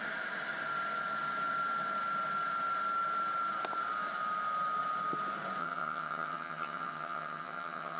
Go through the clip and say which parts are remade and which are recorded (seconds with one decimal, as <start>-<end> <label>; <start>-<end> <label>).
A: 0.0-5.6 recorded; 5.6-8.0 remade